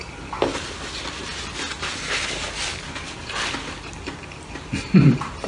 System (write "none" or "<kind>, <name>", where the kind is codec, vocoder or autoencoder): none